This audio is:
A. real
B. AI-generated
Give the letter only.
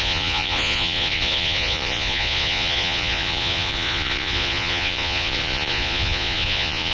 B